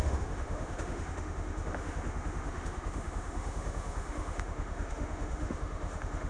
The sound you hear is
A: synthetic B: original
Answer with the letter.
A